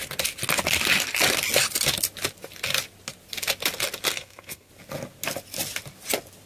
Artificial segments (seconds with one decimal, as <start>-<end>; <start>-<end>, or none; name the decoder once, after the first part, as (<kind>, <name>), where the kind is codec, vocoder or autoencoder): 4.1-4.7 (codec, SNAC)